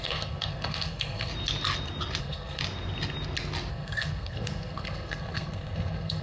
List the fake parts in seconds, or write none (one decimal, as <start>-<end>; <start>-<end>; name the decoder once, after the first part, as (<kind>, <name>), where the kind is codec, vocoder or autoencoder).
0.0-1.3 (codec, SNAC); 2.2-2.6; 3.7-6.2